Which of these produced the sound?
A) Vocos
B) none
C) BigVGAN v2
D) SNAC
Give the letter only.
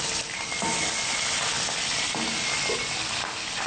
B